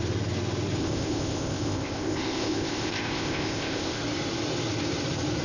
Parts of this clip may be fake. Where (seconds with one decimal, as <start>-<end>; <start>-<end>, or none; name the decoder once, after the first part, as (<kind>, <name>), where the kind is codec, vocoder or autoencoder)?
0.8-4.0 (codec, ZipCodec)